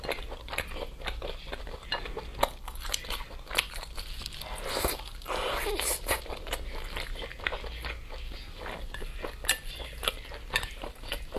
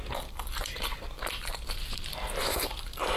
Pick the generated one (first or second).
second